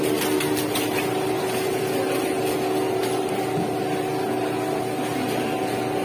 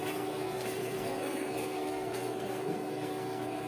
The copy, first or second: second